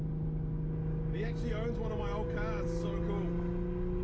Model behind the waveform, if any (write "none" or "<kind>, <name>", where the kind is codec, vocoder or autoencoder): none